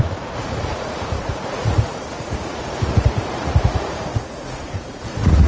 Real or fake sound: fake